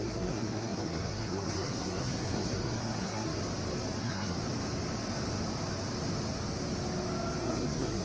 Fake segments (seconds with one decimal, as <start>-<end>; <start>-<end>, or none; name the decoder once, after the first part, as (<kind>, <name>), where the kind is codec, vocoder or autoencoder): 0.0-3.4 (codec, SNAC); 4.0-4.4; 7.4-8.0